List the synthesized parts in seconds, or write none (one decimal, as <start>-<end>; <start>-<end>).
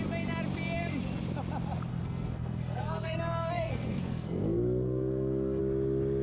1.9-5.6